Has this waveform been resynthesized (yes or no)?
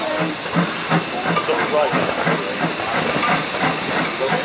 no